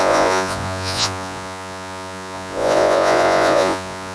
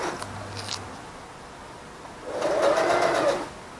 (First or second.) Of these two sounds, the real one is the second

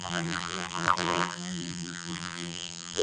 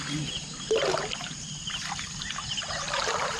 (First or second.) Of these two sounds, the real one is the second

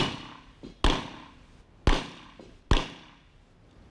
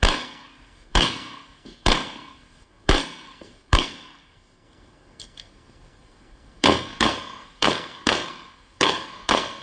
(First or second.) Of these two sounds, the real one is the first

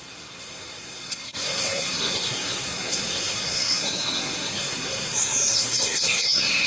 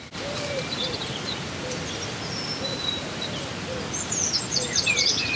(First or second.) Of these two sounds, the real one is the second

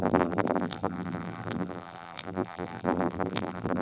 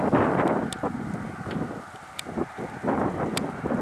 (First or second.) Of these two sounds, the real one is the second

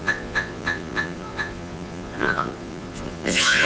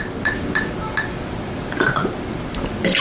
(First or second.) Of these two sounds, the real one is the second